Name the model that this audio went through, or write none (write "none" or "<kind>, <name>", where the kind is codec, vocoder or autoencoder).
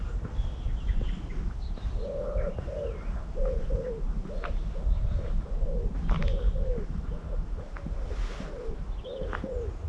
none